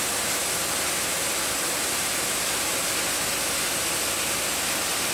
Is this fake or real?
real